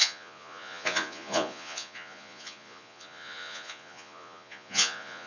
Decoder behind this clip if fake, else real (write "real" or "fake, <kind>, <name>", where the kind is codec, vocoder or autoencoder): fake, vocoder, Vocos